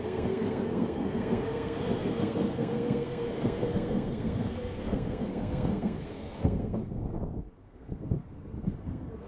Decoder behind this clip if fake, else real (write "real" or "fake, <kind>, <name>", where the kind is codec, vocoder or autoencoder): fake, codec, SNAC